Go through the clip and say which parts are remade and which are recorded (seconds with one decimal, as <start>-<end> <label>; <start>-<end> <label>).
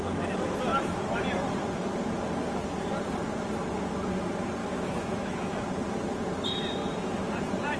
0.0-0.7 recorded; 0.7-1.2 remade; 1.2-4.6 recorded; 4.6-5.5 remade; 5.5-7.8 recorded